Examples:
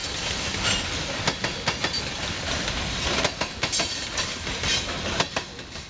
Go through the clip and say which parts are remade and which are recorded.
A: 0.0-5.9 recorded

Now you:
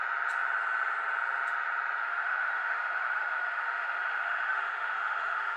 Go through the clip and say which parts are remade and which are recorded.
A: 0.0-2.0 recorded; 2.0-5.6 remade

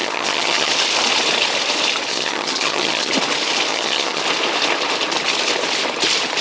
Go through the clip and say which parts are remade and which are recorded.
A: 0.0-0.7 remade; 0.7-2.1 recorded; 2.1-3.1 remade; 3.1-3.7 recorded; 3.7-4.2 remade; 4.2-6.4 recorded

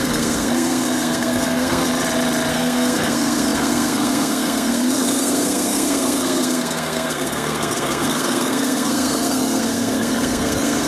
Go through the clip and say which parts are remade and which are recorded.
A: 0.0-1.8 remade; 1.8-2.5 recorded; 2.5-10.9 remade